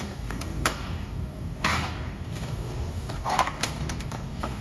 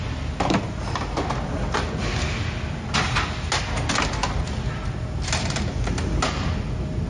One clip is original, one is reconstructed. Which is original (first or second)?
second